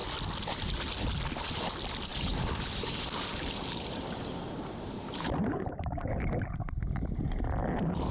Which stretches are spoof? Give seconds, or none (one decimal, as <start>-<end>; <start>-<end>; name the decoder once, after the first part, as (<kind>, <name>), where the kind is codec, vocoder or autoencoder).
2.1-6.1 (vocoder, BigVGAN v2)